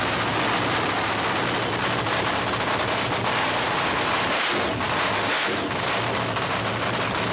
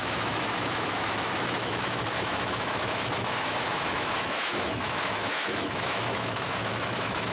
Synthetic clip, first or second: second